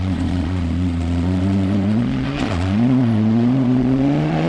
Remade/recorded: remade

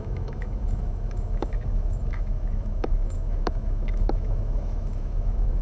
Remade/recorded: remade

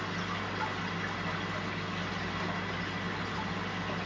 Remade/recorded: recorded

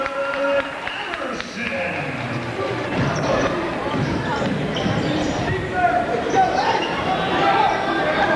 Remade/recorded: remade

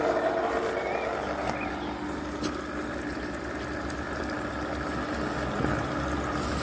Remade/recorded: recorded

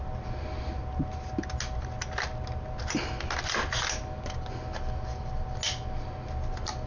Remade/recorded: recorded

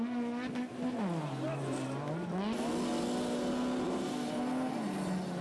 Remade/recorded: recorded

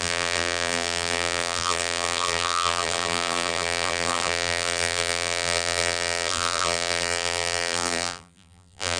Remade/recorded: remade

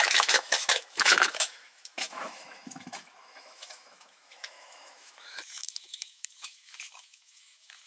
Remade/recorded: remade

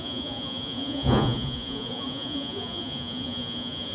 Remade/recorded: remade